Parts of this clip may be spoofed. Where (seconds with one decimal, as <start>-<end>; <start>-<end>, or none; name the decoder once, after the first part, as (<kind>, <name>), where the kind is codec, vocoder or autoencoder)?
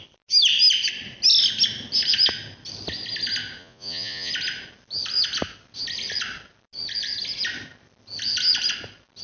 3.6-4.3 (vocoder, Vocos)